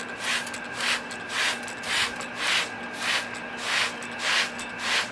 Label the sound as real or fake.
real